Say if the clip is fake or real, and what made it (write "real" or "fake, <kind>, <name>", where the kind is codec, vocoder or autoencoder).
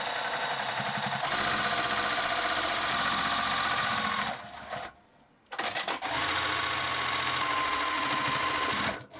real